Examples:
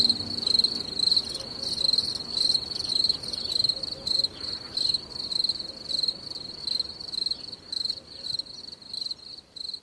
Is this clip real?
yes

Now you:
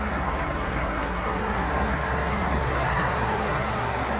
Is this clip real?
no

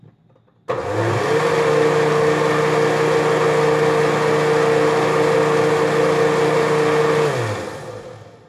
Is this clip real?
yes